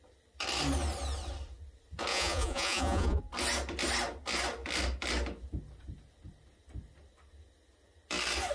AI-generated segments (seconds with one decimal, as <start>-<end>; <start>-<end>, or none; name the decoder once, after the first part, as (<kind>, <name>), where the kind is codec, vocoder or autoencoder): 2.1-3.2 (vocoder, Vocos)